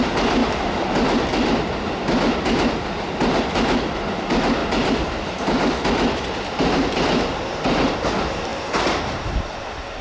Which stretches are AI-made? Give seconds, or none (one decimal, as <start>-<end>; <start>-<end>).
4.6-7.6